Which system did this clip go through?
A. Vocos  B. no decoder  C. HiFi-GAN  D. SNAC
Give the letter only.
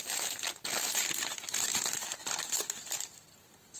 B